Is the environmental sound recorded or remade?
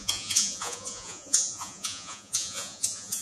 remade